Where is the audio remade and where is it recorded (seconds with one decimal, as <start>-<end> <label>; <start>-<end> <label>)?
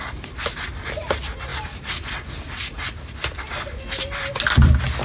0.0-5.0 recorded